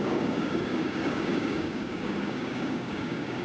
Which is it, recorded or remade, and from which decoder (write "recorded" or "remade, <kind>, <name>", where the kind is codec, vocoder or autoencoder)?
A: remade, codec, DAC